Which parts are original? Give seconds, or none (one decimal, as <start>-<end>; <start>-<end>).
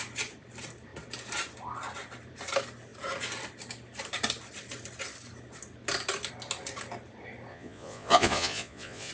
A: 0.0-7.5